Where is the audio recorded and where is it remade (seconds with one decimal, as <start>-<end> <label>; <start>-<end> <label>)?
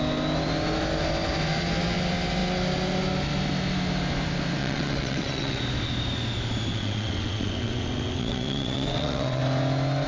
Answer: 0.0-4.6 recorded; 4.6-5.6 remade; 5.6-6.7 recorded; 6.7-9.4 remade; 9.4-10.1 recorded